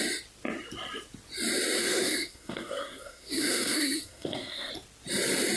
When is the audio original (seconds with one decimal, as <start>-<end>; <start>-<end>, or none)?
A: 0.0-1.8; 4.7-5.6